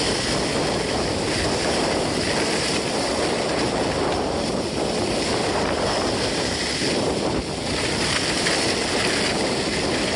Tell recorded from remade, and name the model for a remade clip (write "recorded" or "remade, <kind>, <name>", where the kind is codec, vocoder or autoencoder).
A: recorded